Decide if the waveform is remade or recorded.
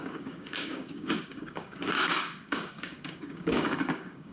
remade